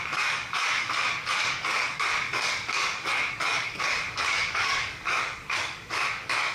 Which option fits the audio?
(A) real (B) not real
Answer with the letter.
B